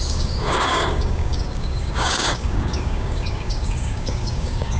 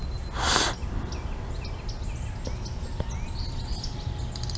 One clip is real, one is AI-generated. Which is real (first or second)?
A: second